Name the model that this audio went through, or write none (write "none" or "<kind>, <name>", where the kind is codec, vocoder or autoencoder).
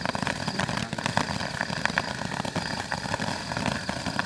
none